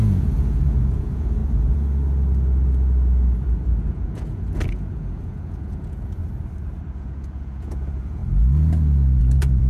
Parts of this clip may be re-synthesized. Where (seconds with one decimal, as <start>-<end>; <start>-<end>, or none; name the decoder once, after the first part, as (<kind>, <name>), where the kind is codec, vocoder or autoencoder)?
0.0-1.4 (vocoder, Vocos); 3.8-6.2; 7.0-8.2; 9.2-9.7